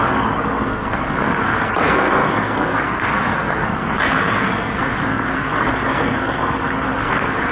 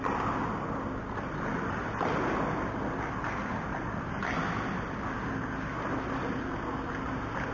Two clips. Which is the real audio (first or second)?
second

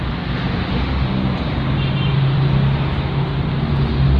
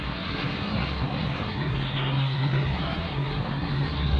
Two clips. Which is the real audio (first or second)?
first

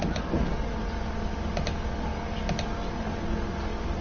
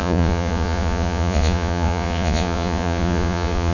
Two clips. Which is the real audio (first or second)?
first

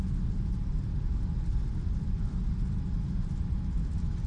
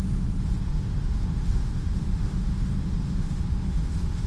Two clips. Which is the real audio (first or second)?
first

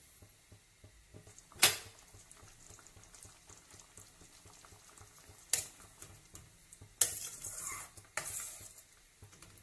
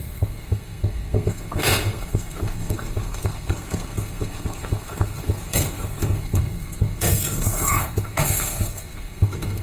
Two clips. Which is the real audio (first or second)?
first